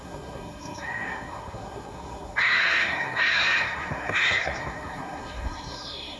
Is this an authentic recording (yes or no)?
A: no